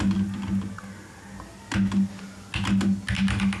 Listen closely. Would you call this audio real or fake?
real